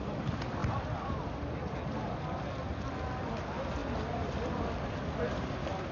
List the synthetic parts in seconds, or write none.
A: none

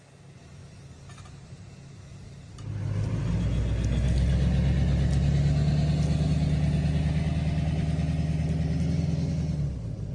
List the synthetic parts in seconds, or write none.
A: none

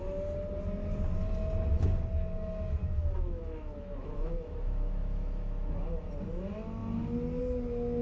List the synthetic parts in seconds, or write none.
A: 2.8-6.1 (autoencoder, DAC-VAE)

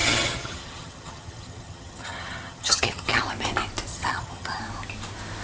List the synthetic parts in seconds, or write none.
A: 0.0-3.2 (vocoder, HiFi-GAN); 3.9-4.6

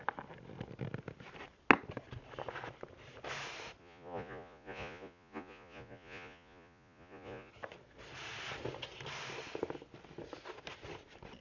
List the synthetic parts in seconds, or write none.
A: 3.8-7.5 (vocoder, Vocos)

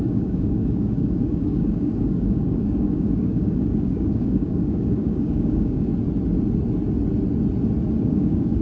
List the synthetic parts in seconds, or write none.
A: 0.0-5.9 (codec, DAC); 8.0-8.6